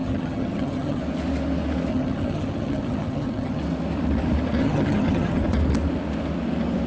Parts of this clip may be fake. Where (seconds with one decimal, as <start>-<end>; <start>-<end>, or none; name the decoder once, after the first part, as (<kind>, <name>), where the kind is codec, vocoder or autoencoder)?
0.0-1.0 (vocoder, HiFi-GAN); 1.9-3.6; 4.6-5.4